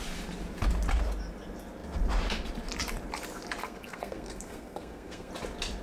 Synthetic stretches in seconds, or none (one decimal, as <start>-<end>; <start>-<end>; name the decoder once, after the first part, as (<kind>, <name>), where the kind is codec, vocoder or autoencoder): 3.6-5.3 (codec, SNAC)